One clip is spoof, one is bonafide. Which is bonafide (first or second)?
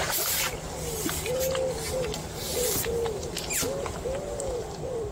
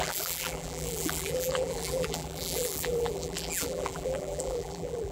first